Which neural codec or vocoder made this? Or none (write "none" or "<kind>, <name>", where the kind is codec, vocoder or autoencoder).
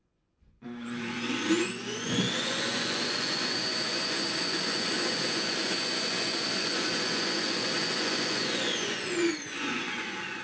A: vocoder, Vocos